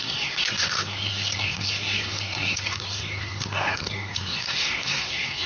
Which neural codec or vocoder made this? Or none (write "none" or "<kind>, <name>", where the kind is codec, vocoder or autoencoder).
codec, SNAC